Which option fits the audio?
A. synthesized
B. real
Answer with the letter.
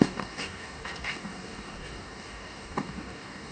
A